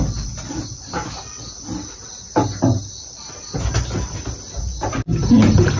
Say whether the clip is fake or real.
real